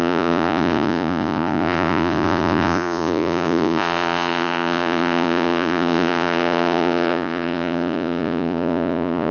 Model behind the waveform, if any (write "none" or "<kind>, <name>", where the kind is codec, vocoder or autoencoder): vocoder, Vocos